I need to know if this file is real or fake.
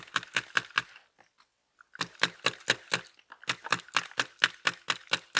real